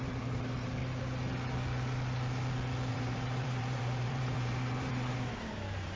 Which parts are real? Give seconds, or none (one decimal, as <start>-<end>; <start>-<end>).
0.8-2.9